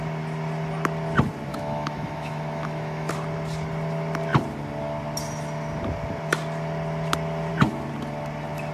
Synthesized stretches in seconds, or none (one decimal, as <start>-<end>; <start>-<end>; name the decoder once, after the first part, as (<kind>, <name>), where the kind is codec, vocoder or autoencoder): 1.5-3.1 (autoencoder, DAC-VAE)